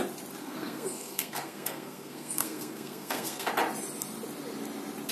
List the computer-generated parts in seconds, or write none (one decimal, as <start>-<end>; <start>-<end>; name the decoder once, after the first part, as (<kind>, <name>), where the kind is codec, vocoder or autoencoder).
0.4-3.5 (codec, SNAC)